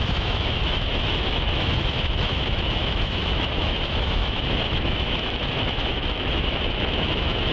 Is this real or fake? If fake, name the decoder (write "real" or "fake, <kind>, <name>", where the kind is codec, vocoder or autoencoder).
fake, autoencoder, DAC-VAE